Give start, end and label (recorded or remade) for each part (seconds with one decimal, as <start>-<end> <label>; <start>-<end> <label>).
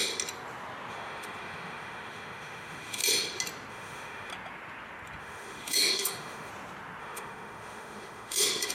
0.0-0.9 recorded; 0.9-3.0 remade; 3.0-3.7 recorded; 3.7-4.3 remade; 4.3-5.2 recorded; 5.2-6.5 remade; 6.5-7.0 recorded; 7.0-8.7 remade